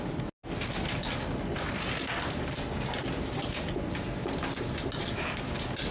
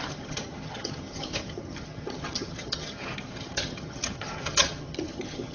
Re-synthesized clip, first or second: second